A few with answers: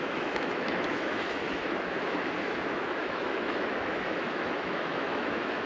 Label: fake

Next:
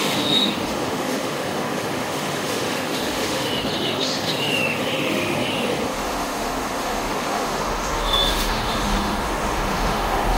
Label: fake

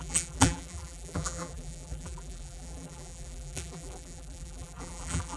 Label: fake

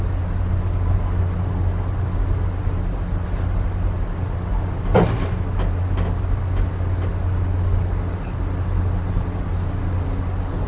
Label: real